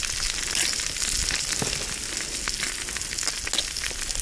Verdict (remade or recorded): recorded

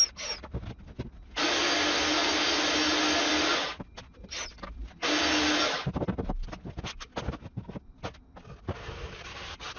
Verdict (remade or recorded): recorded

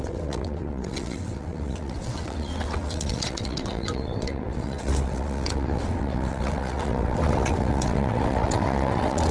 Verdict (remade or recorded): remade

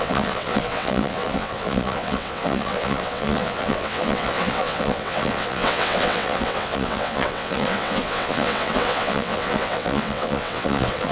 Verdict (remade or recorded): remade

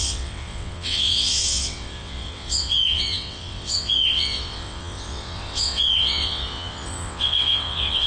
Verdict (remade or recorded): remade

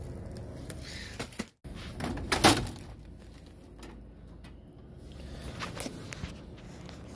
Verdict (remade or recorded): recorded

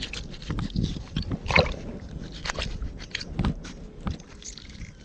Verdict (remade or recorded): recorded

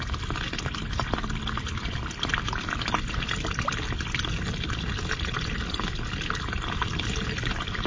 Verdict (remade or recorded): recorded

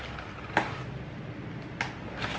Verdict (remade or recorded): recorded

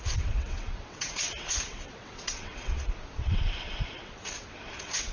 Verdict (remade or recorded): remade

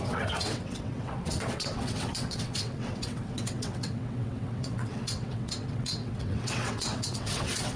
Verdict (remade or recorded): remade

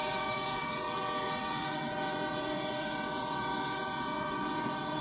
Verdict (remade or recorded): remade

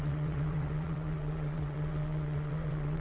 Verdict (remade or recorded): remade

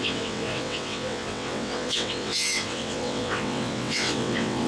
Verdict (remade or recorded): remade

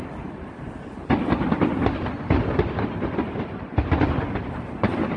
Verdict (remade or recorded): recorded